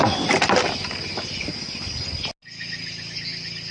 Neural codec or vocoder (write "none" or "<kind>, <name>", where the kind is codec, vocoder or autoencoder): none